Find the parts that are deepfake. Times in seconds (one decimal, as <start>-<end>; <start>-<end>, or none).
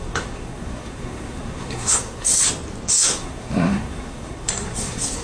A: 0.0-2.3; 2.9-5.2